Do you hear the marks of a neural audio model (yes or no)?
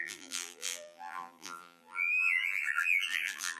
yes